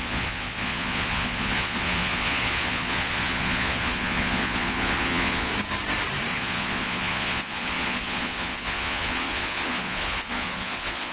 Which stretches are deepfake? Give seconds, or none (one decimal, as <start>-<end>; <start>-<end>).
0.0-5.5; 6.3-11.1

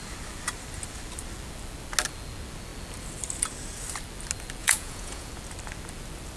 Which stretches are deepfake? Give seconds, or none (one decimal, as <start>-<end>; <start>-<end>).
4.6-5.3

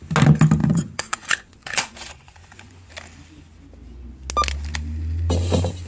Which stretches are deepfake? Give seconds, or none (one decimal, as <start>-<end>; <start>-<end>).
0.6-2.9